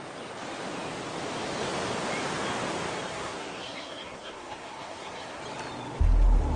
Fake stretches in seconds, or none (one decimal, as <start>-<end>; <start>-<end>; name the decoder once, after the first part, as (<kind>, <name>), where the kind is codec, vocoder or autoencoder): 3.1-5.4 (codec, SNAC)